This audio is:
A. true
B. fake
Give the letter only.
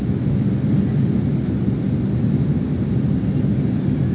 A